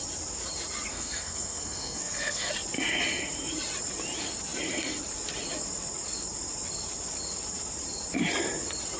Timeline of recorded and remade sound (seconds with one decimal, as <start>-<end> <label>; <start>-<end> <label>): 0.0-0.9 recorded; 0.9-2.5 remade; 2.5-9.0 recorded